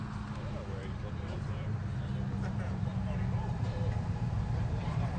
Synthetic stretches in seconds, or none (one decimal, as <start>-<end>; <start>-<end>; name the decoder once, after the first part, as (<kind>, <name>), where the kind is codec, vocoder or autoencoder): 0.8-1.8 (vocoder, BigVGAN v2); 2.5-2.9; 3.5-5.2